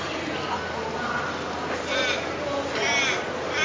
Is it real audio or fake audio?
real